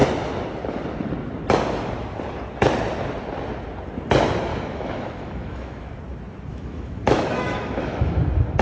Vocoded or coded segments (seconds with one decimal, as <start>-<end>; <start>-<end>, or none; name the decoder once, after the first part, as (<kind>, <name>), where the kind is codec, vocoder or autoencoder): 4.5-6.0 (autoencoder, DAC-VAE); 6.5-8.2